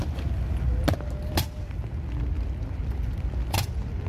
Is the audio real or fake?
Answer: real